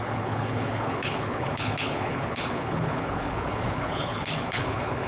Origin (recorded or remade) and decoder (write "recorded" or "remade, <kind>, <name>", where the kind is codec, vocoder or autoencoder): remade, codec, HILCodec